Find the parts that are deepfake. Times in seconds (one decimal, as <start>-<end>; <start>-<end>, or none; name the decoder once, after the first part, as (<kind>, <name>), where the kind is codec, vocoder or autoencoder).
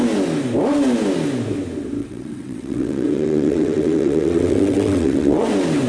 2.0-5.5 (vocoder, WaveNeXt)